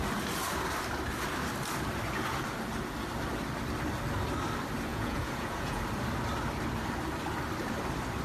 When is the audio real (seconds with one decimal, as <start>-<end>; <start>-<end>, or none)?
0.0-4.9; 5.8-8.2